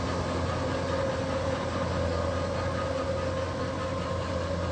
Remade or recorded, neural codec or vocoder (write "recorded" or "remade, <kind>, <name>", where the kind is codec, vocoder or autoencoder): recorded